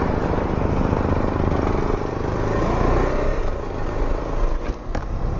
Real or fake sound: real